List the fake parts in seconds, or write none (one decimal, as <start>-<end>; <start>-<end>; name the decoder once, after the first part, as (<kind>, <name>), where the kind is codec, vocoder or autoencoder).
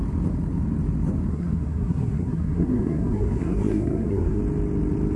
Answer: 1.3-4.4 (codec, SNAC)